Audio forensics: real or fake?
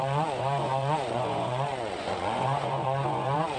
fake